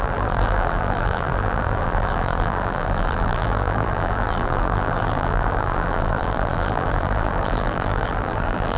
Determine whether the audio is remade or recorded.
remade